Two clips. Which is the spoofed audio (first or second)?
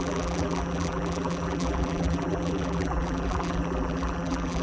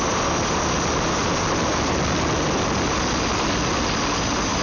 first